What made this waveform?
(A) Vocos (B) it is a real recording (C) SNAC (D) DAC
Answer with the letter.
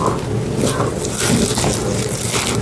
B